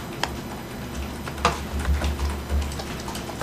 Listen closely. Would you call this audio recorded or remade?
recorded